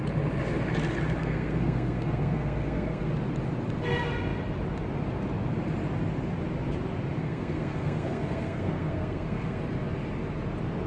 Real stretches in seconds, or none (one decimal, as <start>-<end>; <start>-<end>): 0.0-1.2; 3.1-7.2; 9.6-10.9